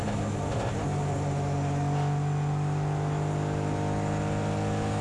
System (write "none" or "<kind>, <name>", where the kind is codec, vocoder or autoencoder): none